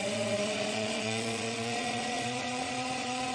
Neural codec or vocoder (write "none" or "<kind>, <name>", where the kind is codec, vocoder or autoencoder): vocoder, Vocos